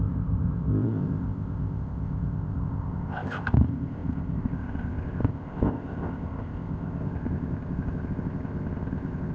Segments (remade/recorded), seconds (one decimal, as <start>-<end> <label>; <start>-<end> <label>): 0.0-9.3 remade

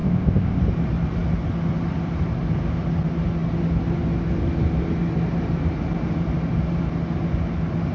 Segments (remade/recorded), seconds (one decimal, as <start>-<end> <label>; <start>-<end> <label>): 0.0-0.6 remade; 0.6-7.9 recorded

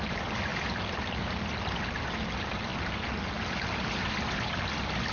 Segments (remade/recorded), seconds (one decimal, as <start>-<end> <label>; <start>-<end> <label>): 0.0-5.1 recorded

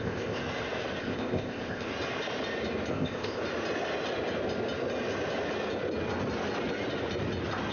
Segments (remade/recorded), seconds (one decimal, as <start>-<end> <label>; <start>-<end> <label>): 0.0-0.4 remade; 0.4-1.0 recorded; 1.0-1.9 remade; 1.9-2.9 recorded; 2.9-3.4 remade; 3.4-7.7 recorded

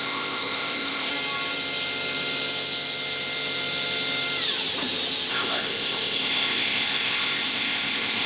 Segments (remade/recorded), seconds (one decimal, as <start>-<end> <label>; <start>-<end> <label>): 0.0-1.1 remade; 1.1-5.3 recorded; 5.3-8.3 remade